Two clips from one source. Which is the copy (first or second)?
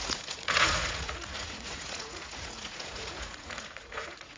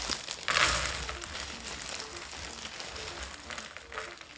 first